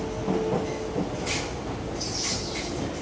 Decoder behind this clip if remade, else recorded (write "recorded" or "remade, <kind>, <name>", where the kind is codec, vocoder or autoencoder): recorded